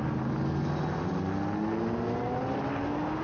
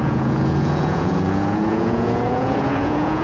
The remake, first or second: second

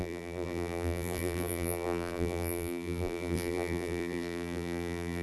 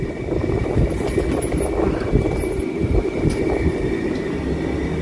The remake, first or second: first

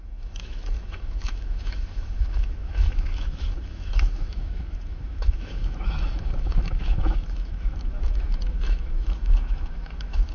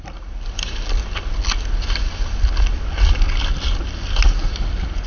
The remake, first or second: first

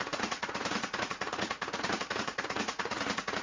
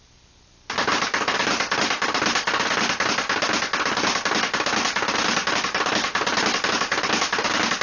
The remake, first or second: first